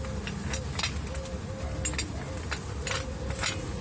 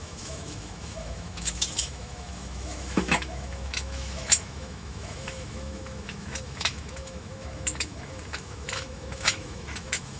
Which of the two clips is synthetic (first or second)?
second